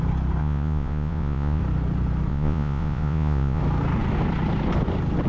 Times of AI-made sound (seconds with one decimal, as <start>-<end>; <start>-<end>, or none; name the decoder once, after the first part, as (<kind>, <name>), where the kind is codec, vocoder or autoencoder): 0.4-1.6 (vocoder, Vocos); 2.3-3.6